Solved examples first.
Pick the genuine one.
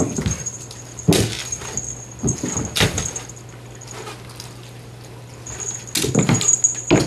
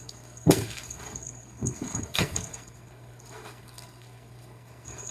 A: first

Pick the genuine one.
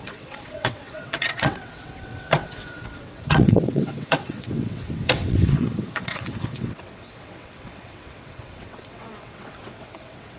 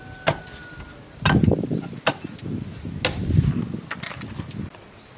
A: second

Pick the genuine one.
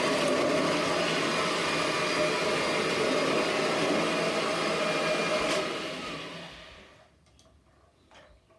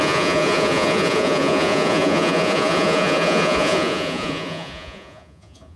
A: first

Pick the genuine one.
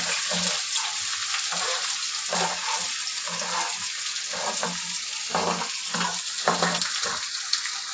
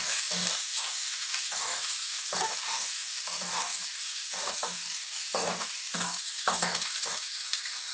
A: first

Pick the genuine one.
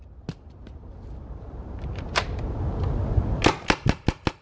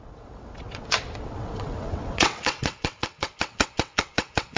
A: first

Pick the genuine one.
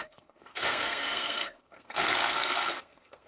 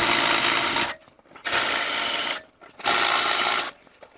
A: second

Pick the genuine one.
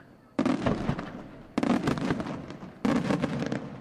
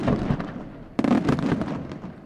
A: first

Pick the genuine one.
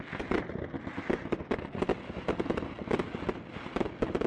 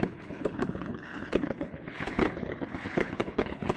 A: first